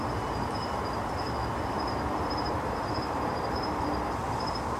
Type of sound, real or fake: fake